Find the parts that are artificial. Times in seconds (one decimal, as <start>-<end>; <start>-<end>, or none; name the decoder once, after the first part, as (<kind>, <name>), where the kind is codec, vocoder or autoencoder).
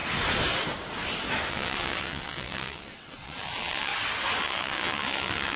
1.5-3.9 (vocoder, WaveNeXt); 4.4-5.6